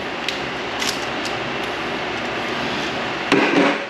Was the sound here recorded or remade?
recorded